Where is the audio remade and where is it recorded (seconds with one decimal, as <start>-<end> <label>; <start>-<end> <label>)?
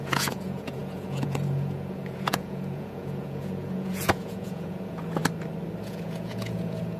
0.0-5.2 remade; 5.2-5.8 recorded; 5.8-7.0 remade